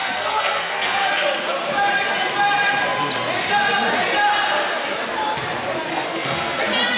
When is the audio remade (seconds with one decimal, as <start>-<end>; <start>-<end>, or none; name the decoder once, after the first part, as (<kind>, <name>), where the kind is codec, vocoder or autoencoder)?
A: 0.0-1.1 (codec, SNAC); 5.9-6.6